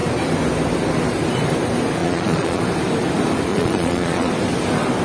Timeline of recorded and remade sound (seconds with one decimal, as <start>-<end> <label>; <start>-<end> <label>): 0.0-2.0 recorded; 2.0-2.6 remade; 2.6-3.5 recorded; 3.5-4.3 remade; 4.3-5.0 recorded